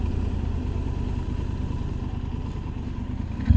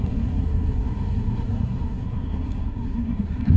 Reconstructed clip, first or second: second